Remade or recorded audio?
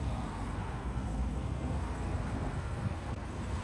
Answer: remade